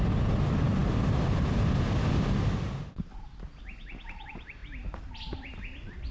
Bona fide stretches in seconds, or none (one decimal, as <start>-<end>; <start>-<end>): 0.0-6.1